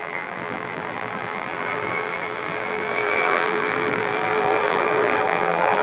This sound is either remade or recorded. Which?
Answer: remade